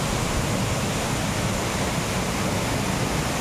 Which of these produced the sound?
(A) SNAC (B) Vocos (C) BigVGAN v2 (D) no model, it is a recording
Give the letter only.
D